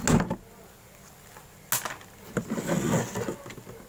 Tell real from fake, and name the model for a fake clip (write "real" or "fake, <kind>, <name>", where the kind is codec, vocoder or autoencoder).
real